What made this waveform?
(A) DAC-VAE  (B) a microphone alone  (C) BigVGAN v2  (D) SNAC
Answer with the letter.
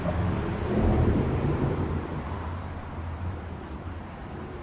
C